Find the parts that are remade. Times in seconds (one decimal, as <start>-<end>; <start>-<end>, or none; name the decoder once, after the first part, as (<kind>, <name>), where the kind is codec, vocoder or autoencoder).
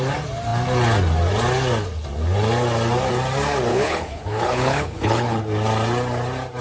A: 3.7-5.4 (codec, HILCodec)